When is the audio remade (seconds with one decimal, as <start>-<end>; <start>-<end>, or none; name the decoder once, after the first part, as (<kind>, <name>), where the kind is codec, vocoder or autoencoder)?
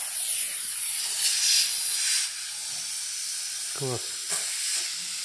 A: none